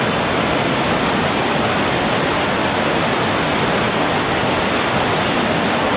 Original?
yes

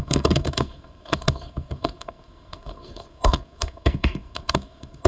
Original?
no